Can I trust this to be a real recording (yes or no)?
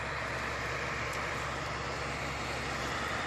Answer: no